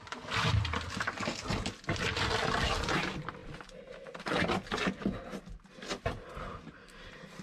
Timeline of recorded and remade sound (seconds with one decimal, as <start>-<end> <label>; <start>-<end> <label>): 0.0-7.4 recorded